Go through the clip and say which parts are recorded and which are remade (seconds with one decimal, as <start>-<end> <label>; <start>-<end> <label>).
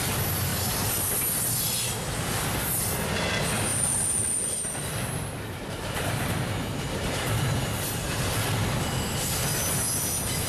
0.0-3.7 recorded; 3.7-7.4 remade; 7.4-10.5 recorded